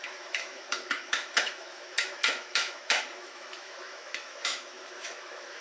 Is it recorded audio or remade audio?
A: remade